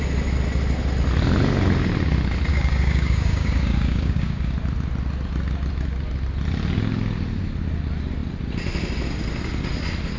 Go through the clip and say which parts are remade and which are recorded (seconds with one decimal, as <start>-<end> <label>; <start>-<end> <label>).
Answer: 0.0-2.5 recorded; 2.5-4.5 remade; 4.5-10.2 recorded